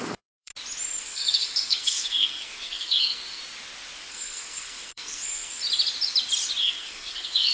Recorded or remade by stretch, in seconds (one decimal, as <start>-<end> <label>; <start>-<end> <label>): 0.0-0.5 remade; 0.5-1.0 recorded; 1.0-3.4 remade; 3.4-4.1 recorded; 4.1-5.6 remade; 5.6-6.6 recorded; 6.6-7.5 remade